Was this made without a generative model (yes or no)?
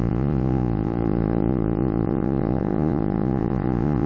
no